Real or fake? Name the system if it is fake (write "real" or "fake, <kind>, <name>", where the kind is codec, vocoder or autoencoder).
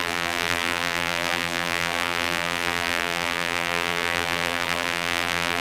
fake, vocoder, BigVGAN v2